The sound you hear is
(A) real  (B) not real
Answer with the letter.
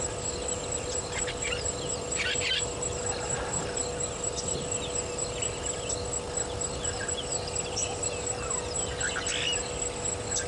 A